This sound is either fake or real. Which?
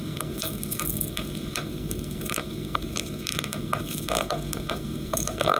fake